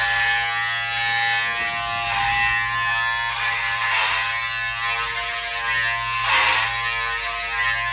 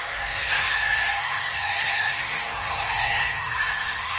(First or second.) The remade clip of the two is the second